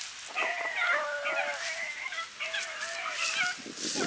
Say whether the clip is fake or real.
real